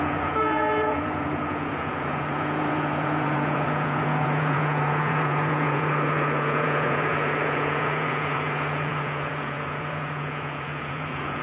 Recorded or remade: remade